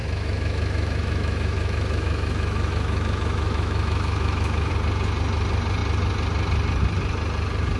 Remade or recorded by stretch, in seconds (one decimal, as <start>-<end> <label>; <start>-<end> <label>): 0.0-4.7 remade; 4.7-7.8 recorded